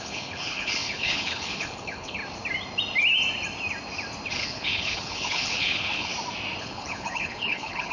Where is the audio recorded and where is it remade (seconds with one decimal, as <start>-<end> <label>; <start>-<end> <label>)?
0.0-2.2 remade; 2.2-4.3 recorded; 4.3-6.1 remade; 6.1-6.6 recorded; 6.6-7.9 remade

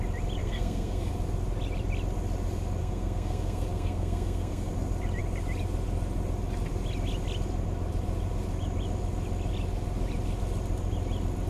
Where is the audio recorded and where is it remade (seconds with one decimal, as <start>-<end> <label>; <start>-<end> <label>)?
0.0-0.4 recorded; 0.4-1.1 remade; 1.1-2.8 recorded; 2.8-4.7 remade; 4.7-11.5 recorded

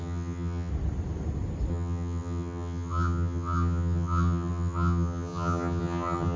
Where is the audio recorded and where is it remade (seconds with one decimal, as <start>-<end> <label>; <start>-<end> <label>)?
0.0-0.7 remade; 0.7-1.7 recorded; 1.7-6.4 remade

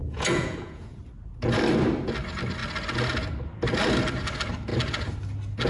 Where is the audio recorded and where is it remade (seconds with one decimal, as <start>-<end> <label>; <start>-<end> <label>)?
0.0-1.0 remade; 1.0-5.7 recorded

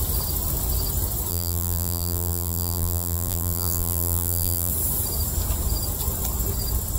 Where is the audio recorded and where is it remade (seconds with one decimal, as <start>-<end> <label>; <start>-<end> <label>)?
0.0-1.3 recorded; 1.3-4.7 remade; 4.7-7.0 recorded

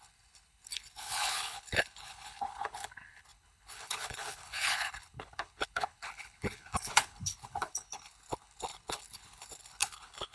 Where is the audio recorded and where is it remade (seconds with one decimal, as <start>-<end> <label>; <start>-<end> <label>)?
0.0-10.3 remade

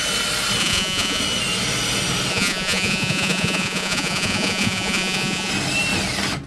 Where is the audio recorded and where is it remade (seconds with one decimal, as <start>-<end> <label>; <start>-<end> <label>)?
0.0-0.6 recorded; 0.6-1.2 remade; 1.2-2.3 recorded; 2.3-5.5 remade; 5.5-6.5 recorded